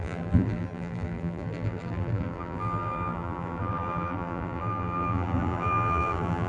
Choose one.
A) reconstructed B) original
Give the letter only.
A